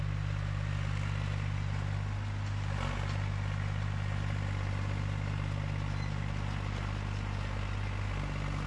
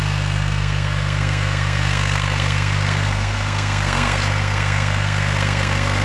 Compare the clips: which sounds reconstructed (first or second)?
second